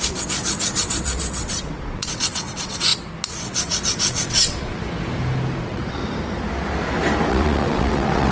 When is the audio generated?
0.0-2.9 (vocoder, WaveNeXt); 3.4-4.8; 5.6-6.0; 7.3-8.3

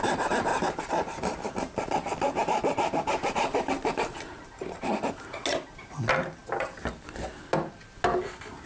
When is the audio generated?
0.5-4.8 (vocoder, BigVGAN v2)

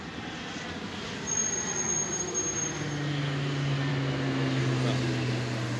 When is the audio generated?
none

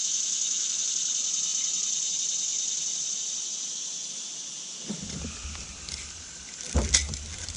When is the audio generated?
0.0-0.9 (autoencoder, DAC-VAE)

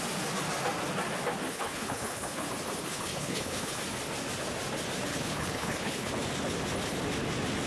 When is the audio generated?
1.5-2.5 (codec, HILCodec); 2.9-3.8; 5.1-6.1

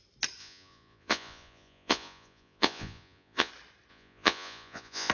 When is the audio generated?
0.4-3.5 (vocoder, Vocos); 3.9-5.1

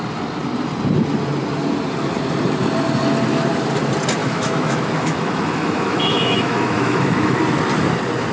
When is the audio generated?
4.2-7.4 (autoencoder, DAC-VAE)